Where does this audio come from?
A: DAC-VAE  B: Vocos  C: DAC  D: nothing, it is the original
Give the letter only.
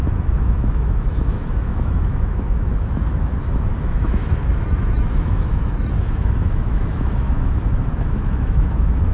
A